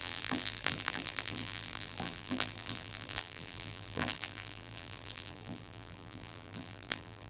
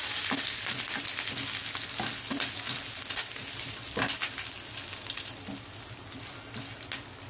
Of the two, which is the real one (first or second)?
second